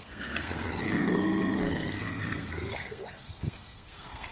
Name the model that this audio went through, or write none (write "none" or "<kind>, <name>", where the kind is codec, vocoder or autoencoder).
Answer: codec, SNAC